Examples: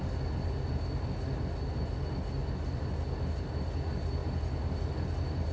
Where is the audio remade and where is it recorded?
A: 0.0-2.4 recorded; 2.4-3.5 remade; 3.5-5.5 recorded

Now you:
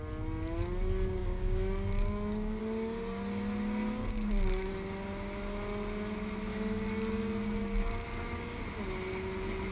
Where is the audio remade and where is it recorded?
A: 0.0-1.2 recorded; 1.2-2.6 remade; 2.6-4.0 recorded; 4.0-4.7 remade; 4.7-6.5 recorded; 6.5-8.6 remade; 8.6-9.7 recorded

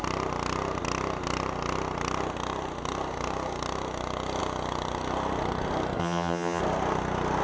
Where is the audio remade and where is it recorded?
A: 0.0-6.0 recorded; 6.0-6.6 remade; 6.6-7.4 recorded